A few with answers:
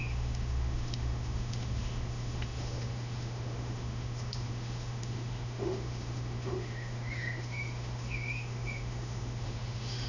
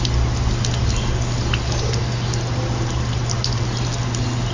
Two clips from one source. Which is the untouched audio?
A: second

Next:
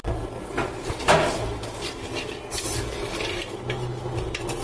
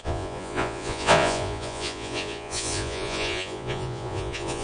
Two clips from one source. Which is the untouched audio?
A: first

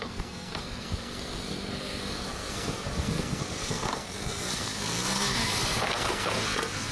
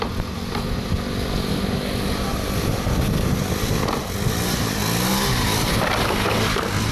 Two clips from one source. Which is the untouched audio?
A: second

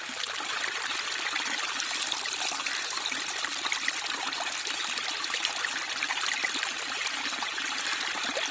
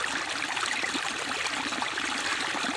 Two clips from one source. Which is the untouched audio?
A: first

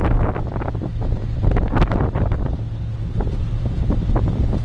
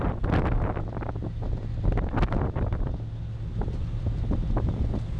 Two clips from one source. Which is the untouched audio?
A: second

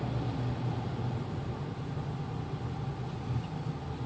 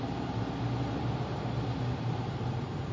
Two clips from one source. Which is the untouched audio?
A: first